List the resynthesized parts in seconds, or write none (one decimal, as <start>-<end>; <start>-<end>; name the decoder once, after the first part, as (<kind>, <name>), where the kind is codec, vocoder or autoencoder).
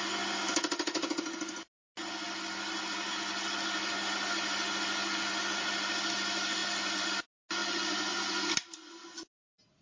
6.6-7.1 (vocoder, BigVGAN v2)